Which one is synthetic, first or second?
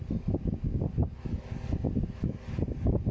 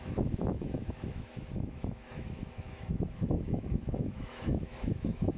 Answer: second